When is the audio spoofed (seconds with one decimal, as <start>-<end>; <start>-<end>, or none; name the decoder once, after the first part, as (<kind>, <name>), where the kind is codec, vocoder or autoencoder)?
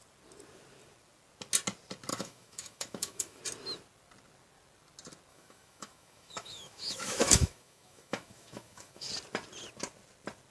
2.1-3.4 (autoencoder, DAC-VAE); 5.3-9.1